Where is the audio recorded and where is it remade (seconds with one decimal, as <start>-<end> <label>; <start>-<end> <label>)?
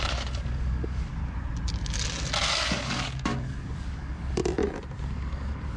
0.0-1.2 remade; 1.2-2.5 recorded; 2.5-4.4 remade; 4.4-5.0 recorded; 5.0-5.8 remade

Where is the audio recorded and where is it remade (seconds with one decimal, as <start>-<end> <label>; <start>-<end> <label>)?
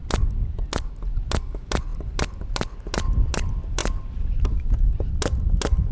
0.0-5.9 recorded